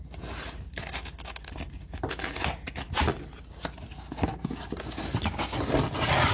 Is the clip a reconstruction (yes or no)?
no